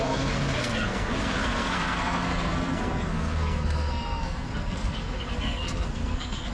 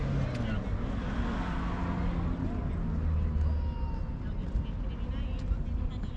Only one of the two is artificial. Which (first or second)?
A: first